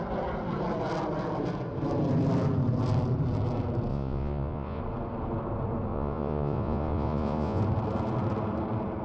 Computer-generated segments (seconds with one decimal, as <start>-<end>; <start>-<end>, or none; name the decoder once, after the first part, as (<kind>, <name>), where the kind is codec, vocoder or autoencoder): 3.9-4.8 (vocoder, Vocos); 5.9-7.6